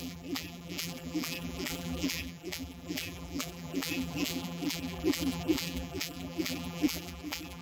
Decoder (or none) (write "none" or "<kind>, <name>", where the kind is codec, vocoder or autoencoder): vocoder, BigVGAN v2